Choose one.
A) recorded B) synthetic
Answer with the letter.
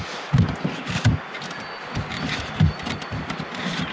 A